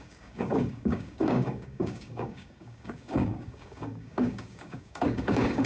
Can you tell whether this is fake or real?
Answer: fake